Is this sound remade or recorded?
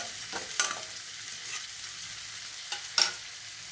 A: recorded